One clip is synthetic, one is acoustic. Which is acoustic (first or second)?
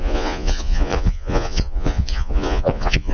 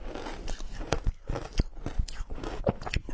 second